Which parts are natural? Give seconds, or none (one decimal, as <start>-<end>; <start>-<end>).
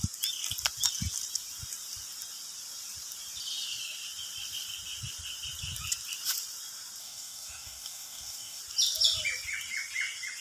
0.0-7.0; 8.6-10.4